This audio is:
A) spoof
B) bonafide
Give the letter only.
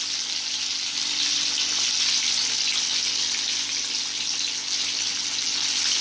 B